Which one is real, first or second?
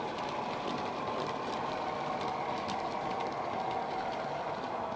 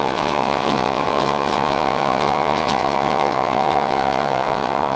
first